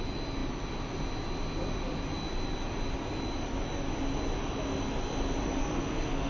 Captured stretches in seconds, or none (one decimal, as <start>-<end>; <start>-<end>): 0.0-5.6